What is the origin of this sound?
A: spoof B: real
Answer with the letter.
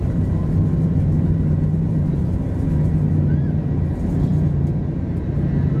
A